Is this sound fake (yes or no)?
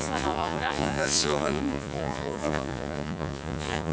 yes